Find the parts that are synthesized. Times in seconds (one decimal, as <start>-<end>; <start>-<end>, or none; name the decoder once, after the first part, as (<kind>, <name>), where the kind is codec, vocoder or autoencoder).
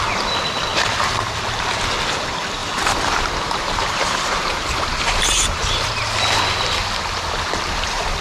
2.6-5.9 (vocoder, BigVGAN v2)